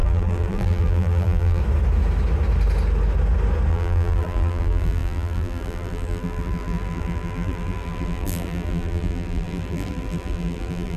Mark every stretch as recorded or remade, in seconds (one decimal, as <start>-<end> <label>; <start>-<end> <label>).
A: 0.0-1.6 remade; 1.6-3.7 recorded; 3.7-11.0 remade